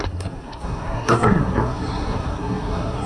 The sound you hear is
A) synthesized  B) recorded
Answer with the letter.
A